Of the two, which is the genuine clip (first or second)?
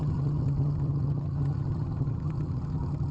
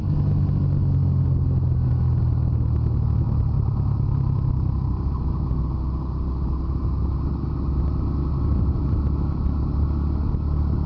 second